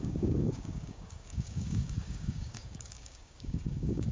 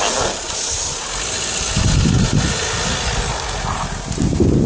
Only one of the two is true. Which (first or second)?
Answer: second